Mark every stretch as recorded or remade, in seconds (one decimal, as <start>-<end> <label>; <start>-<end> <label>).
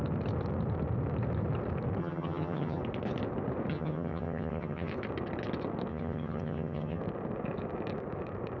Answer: 0.0-2.0 recorded; 2.0-2.8 remade; 2.8-3.7 recorded; 3.7-4.9 remade; 4.9-5.9 recorded; 5.9-7.0 remade; 7.0-8.6 recorded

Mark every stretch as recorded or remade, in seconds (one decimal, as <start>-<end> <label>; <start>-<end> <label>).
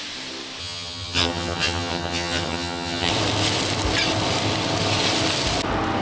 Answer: 0.0-0.6 recorded; 0.6-3.1 remade; 3.1-6.0 recorded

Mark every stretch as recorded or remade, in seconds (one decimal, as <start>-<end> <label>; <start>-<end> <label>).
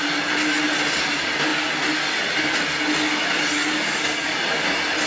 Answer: 0.0-5.1 recorded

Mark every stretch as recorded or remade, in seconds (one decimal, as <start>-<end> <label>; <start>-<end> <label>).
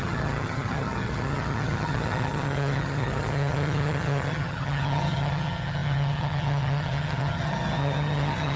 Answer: 0.0-8.6 remade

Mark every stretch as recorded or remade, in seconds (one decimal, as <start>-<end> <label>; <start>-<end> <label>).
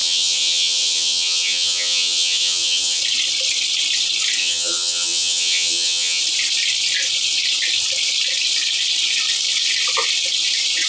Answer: 0.0-3.0 remade; 3.0-4.4 recorded; 4.4-6.2 remade; 6.2-10.9 recorded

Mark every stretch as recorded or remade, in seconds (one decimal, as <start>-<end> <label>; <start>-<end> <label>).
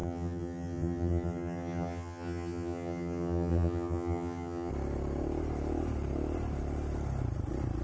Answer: 0.0-4.7 remade; 4.7-7.8 recorded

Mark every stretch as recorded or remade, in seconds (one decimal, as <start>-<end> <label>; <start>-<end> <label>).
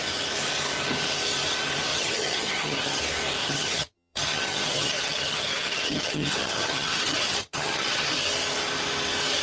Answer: 0.0-1.9 recorded; 1.9-3.0 remade; 3.0-3.4 recorded; 3.4-8.1 remade; 8.1-9.4 recorded